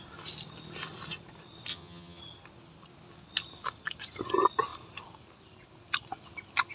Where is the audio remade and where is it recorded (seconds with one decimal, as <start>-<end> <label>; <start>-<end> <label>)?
0.0-1.7 recorded; 1.7-2.2 remade; 2.2-6.7 recorded